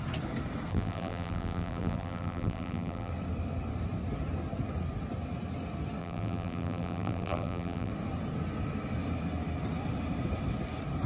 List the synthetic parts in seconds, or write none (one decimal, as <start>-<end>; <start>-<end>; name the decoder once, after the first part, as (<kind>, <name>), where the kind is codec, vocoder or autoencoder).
0.7-3.1 (vocoder, BigVGAN v2); 6.0-7.9